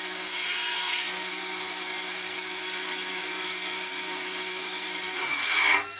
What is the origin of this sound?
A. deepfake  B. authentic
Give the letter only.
A